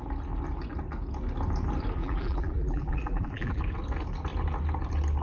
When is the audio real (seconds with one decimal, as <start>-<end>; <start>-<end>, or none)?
0.0-2.0; 3.6-5.2